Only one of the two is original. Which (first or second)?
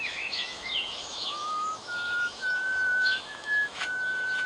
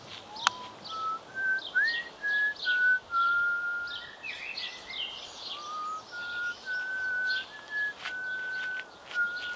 second